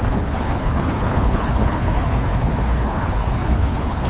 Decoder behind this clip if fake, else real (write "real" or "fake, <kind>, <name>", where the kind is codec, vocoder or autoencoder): fake, codec, HILCodec